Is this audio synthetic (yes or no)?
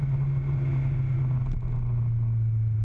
no